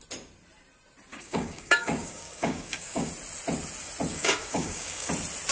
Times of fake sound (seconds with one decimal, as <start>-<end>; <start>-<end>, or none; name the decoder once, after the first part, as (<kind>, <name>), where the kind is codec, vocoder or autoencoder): 1.1-3.1 (codec, DAC); 4.1-5.1